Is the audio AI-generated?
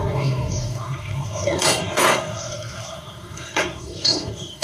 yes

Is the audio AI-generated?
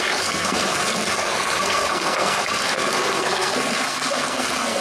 yes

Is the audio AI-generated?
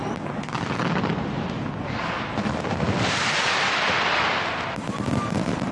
no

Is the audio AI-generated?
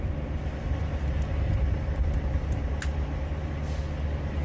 no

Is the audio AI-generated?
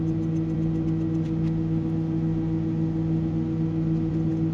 no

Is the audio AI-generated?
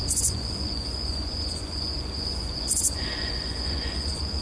yes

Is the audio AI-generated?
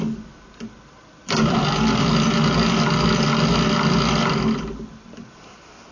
no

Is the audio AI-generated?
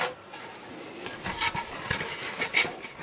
no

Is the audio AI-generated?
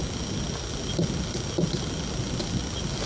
no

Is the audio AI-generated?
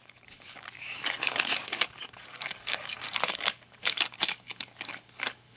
yes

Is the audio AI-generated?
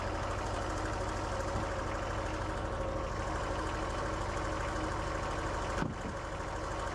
no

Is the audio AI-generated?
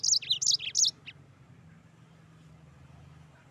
no